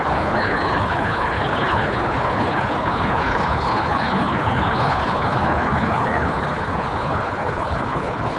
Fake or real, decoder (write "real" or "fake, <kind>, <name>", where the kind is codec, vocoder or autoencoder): fake, codec, HILCodec